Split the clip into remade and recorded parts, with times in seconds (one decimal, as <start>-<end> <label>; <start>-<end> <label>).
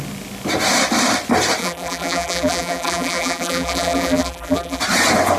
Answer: 0.0-1.6 recorded; 1.6-4.8 remade; 4.8-5.4 recorded